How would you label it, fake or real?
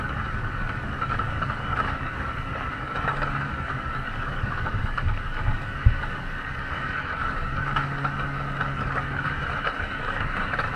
fake